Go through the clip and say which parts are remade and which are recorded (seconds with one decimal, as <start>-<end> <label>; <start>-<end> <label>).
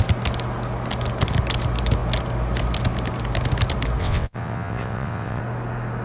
0.0-4.0 recorded; 4.0-5.4 remade; 5.4-6.0 recorded